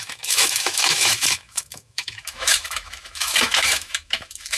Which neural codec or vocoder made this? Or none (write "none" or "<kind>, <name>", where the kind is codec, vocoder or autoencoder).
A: autoencoder, DAC-VAE